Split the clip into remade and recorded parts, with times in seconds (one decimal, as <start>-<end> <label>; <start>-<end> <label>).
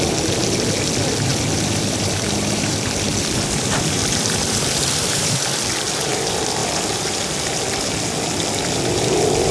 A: 0.0-1.3 recorded; 1.3-5.4 remade; 5.4-9.5 recorded